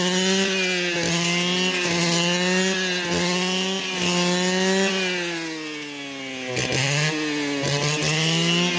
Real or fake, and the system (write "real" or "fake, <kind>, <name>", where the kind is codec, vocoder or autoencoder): real